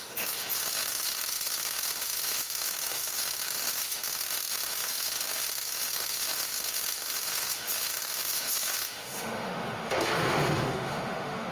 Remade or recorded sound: remade